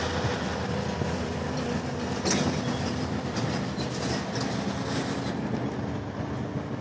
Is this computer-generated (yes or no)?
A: no